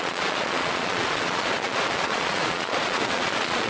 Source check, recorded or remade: remade